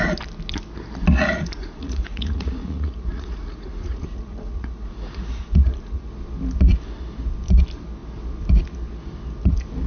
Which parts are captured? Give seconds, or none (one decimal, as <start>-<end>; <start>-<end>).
0.0-1.1; 6.1-9.9